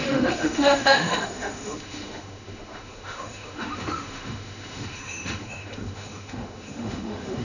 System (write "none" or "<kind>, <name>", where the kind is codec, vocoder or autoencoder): autoencoder, DAC-VAE